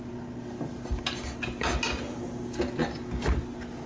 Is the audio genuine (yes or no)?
yes